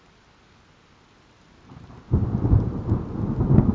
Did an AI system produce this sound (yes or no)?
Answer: no